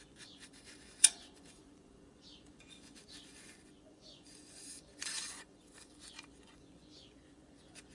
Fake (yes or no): yes